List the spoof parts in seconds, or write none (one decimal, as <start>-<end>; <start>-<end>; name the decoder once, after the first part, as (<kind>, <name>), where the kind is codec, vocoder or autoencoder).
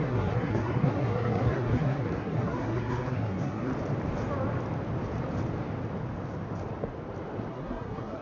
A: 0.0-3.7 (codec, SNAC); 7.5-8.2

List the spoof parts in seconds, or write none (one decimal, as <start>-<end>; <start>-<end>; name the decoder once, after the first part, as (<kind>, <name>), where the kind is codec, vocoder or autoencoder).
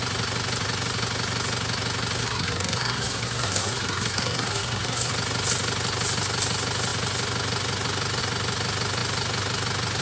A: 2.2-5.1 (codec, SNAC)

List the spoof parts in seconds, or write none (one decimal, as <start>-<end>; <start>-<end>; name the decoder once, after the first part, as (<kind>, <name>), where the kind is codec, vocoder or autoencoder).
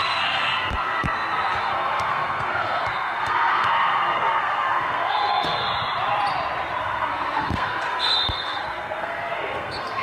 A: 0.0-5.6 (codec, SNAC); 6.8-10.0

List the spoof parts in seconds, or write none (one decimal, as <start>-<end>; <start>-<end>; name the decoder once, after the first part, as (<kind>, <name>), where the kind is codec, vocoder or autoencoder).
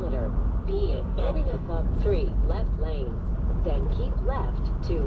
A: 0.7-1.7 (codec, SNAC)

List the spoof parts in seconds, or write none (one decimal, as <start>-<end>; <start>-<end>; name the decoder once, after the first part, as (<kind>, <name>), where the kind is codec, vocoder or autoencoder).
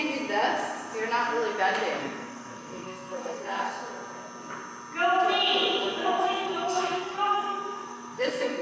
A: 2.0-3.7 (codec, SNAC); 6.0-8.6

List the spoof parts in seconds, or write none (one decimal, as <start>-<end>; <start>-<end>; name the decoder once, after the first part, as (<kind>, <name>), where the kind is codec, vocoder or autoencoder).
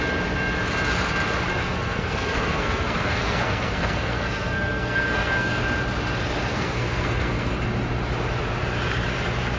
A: 1.6-5.6 (codec, SNAC); 6.5-7.5